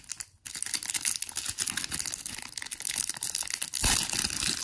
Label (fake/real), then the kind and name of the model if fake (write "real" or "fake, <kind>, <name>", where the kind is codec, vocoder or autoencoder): real